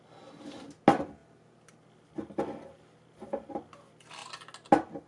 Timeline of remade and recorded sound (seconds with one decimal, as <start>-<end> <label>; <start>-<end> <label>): 0.0-5.1 recorded